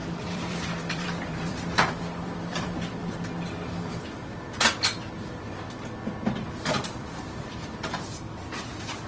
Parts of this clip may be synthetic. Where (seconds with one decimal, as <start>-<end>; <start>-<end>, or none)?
0.0-3.0; 7.2-9.1